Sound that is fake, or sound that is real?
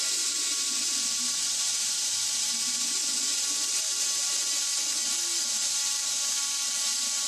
real